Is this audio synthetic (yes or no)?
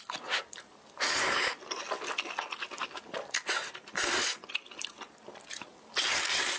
no